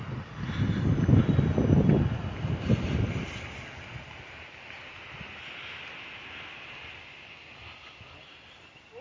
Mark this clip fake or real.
real